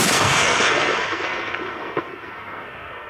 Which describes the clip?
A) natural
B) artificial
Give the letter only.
B